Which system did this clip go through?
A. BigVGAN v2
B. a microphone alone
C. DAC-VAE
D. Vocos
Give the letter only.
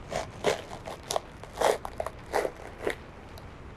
B